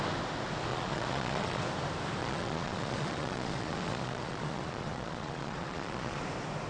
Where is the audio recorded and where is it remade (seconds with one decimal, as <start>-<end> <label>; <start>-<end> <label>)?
0.0-0.7 recorded; 0.7-1.6 remade; 1.6-2.2 recorded; 2.2-6.2 remade; 6.2-6.7 recorded